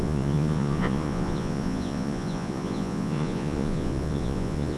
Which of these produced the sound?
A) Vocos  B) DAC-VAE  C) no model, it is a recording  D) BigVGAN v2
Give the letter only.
A